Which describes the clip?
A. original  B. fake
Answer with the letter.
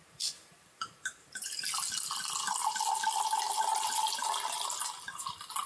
A